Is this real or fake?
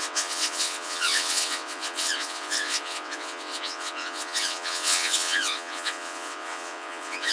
fake